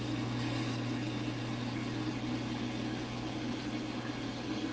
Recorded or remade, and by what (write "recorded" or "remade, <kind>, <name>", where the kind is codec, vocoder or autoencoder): recorded